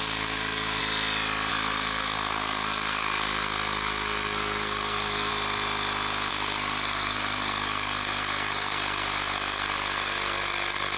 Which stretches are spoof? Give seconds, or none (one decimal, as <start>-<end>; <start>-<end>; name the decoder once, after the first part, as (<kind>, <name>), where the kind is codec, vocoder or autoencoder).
0.0-0.8 (codec, SNAC); 1.5-5.3; 6.3-11.0